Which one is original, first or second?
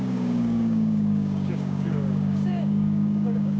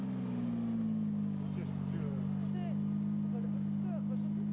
second